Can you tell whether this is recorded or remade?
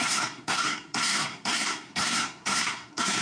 remade